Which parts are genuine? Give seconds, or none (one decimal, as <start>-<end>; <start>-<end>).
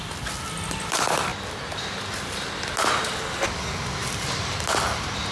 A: 0.0-5.3